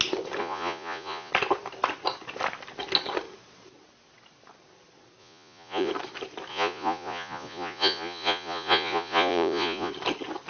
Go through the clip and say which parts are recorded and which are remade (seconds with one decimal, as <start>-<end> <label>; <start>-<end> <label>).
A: 0.0-0.4 recorded; 0.4-1.3 remade; 1.3-5.2 recorded; 5.2-5.9 remade; 5.9-6.5 recorded; 6.5-9.9 remade; 9.9-10.5 recorded